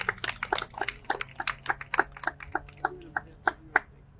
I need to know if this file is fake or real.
real